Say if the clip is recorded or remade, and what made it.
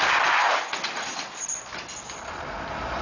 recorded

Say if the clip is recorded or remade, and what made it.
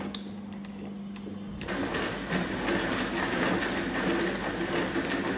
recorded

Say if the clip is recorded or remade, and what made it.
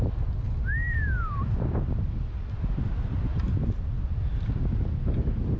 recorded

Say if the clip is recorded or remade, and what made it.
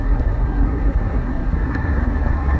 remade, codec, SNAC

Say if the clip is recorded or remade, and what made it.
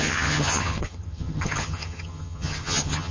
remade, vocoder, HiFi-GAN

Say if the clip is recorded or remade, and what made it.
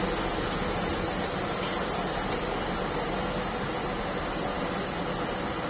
recorded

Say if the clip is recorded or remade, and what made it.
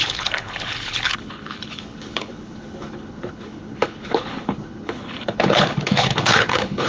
remade, codec, HILCodec